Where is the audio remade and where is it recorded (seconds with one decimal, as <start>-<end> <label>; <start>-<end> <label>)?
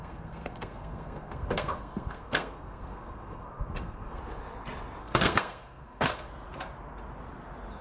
0.0-4.2 remade; 4.2-5.0 recorded; 5.0-6.3 remade; 6.3-7.8 recorded